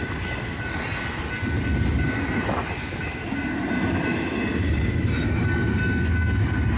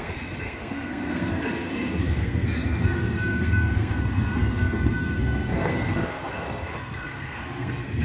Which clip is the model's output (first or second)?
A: second